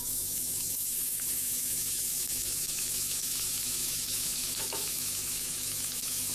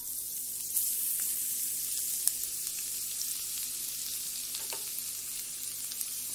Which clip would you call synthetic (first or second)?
first